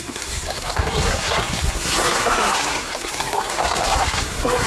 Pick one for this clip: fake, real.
fake